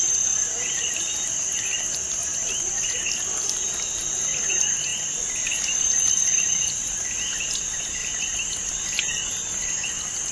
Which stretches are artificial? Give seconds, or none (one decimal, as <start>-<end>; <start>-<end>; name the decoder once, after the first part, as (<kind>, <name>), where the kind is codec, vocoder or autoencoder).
8.0-9.1 (vocoder, BigVGAN v2)